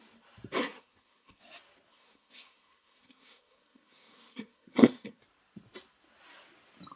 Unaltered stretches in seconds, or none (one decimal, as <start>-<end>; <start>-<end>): 0.0-0.6; 1.4-1.9; 5.2-7.0